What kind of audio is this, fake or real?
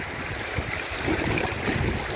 real